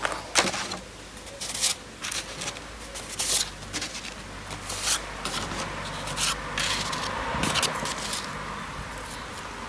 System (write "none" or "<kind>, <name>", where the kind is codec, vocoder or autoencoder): none